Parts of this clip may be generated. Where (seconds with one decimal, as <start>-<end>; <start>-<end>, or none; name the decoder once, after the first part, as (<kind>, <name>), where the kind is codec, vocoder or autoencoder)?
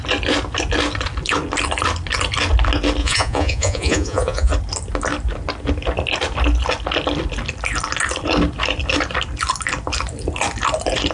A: 3.0-4.5 (vocoder, Vocos)